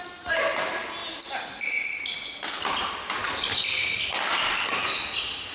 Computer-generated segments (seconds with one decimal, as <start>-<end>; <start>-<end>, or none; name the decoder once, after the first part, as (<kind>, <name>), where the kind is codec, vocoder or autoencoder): none